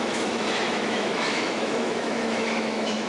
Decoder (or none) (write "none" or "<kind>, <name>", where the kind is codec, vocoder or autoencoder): autoencoder, DAC-VAE